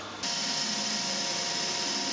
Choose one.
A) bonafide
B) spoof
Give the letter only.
A